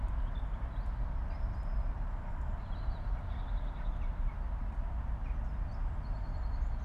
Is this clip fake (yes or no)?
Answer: no